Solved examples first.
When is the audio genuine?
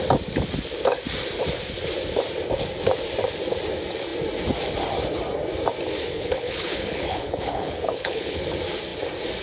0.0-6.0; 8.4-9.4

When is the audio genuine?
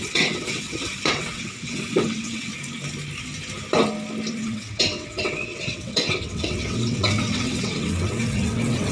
2.5-4.3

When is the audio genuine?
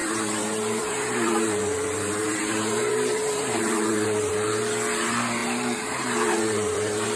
4.3-5.4